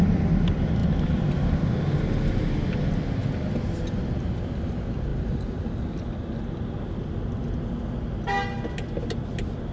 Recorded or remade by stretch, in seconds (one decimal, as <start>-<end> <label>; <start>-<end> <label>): 0.0-9.7 recorded